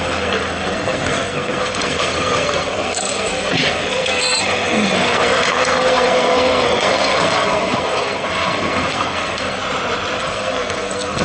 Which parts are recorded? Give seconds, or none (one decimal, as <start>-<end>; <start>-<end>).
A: 9.6-10.2

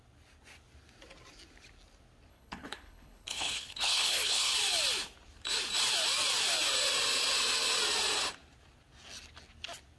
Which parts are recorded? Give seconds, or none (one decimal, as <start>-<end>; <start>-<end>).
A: 0.0-2.3; 4.5-10.0